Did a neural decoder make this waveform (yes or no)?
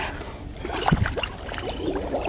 no